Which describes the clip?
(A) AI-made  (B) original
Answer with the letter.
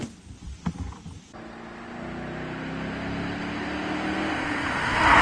B